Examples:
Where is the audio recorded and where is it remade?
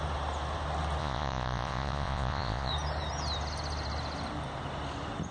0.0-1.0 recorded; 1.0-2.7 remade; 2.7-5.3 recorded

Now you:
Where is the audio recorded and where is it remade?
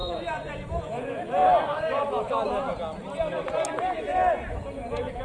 0.0-1.4 remade; 1.4-4.5 recorded; 4.5-5.2 remade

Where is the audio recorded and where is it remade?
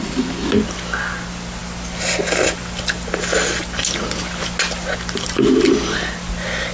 0.0-6.7 recorded